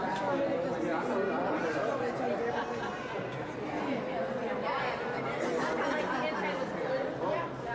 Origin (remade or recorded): recorded